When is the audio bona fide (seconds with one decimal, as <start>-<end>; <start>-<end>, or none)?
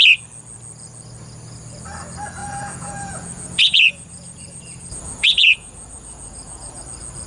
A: 0.0-2.4; 6.8-7.3